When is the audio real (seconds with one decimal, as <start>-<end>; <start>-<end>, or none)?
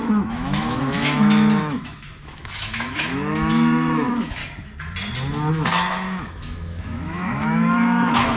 4.4-5.5